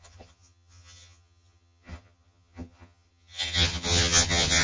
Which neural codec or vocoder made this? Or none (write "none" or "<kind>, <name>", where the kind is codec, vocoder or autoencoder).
vocoder, HiFi-GAN